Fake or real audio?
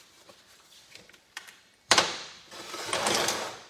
fake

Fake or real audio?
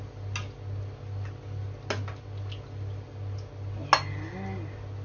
real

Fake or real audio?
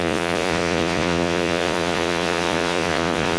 fake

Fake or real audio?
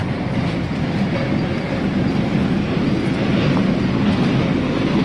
real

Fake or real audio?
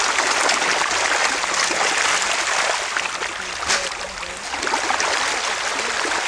real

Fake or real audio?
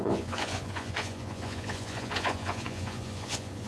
fake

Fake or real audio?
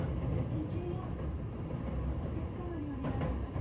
real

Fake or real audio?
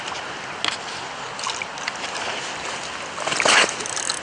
real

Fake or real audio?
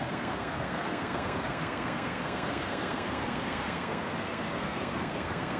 fake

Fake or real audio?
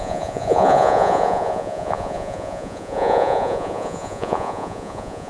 fake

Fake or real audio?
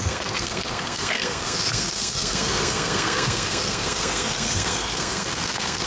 fake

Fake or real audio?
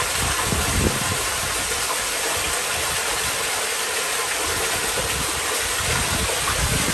fake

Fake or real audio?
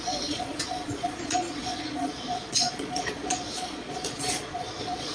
fake